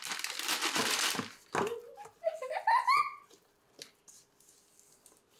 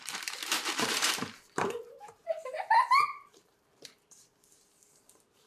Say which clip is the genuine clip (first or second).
first